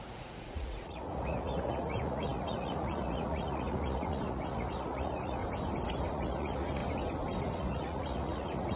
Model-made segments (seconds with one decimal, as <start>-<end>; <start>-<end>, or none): 0.0-5.4; 6.1-6.8; 7.4-8.8